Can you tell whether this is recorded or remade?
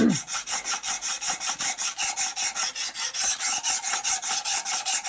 recorded